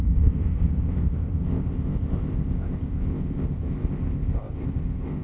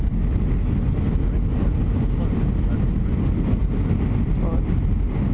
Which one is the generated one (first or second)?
first